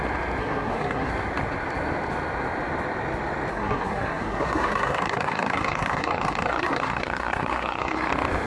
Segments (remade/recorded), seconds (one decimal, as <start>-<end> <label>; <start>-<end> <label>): 0.0-0.4 recorded; 0.4-1.1 remade; 1.1-3.5 recorded; 3.5-8.1 remade; 8.1-8.5 recorded